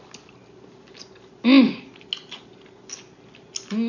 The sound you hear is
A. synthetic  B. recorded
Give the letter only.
B